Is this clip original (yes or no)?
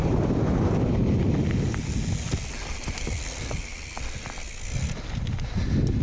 yes